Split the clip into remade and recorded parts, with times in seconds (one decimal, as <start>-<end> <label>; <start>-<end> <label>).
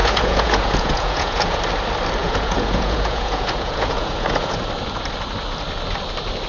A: 0.0-1.6 remade; 1.6-2.2 recorded; 2.2-4.6 remade; 4.6-6.5 recorded